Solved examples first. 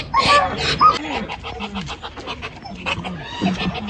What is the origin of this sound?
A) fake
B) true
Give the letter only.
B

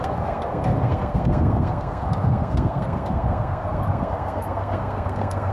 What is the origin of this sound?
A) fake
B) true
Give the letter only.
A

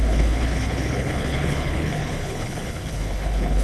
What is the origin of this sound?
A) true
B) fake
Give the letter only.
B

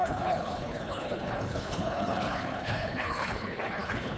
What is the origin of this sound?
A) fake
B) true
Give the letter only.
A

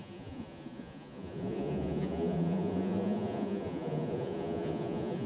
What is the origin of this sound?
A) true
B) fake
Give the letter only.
B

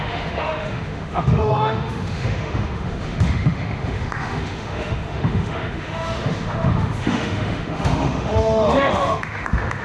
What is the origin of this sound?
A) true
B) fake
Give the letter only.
B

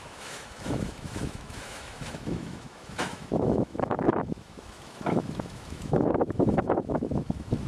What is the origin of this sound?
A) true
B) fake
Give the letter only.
B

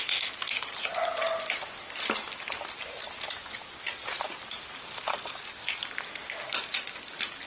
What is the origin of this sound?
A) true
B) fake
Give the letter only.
A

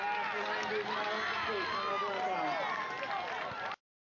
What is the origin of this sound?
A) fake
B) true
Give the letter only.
B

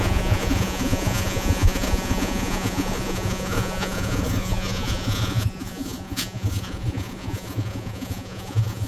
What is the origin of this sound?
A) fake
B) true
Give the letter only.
A